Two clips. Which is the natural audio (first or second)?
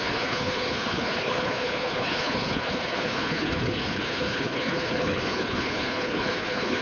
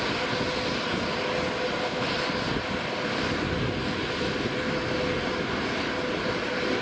second